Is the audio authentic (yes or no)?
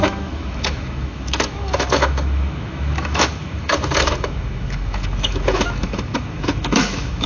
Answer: no